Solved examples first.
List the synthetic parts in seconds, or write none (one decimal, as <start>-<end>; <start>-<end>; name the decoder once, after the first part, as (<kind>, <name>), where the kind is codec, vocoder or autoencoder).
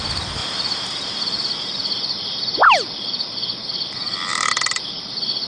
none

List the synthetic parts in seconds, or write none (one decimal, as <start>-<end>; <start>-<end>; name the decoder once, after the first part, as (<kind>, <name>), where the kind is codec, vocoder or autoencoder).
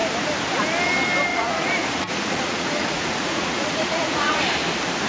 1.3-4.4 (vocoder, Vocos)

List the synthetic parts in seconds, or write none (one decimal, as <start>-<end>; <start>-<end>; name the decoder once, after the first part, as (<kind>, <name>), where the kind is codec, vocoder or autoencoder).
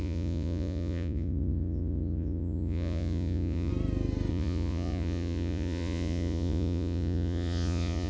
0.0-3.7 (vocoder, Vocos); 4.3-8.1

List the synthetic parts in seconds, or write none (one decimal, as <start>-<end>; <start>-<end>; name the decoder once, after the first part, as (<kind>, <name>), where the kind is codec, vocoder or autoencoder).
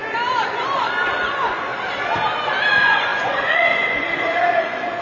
0.5-1.7 (vocoder, Vocos); 2.7-5.0